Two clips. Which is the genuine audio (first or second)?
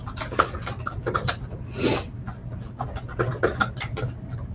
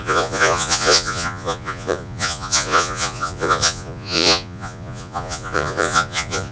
first